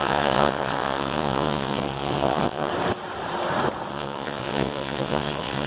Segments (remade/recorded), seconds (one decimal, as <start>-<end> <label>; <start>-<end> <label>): 0.0-2.7 remade; 2.7-3.9 recorded; 3.9-5.7 remade